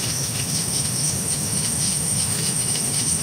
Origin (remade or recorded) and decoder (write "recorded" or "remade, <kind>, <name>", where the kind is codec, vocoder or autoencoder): remade, autoencoder, DAC-VAE